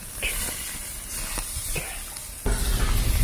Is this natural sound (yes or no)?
yes